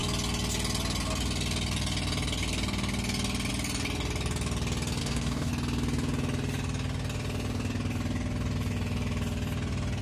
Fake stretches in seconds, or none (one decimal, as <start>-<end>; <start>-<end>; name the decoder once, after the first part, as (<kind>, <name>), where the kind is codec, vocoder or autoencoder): 5.0-5.5 (codec, DAC)